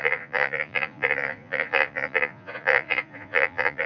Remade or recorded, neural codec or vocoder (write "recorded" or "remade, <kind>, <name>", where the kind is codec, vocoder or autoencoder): remade, vocoder, Vocos